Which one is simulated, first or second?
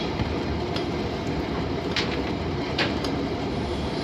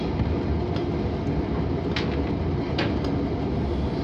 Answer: first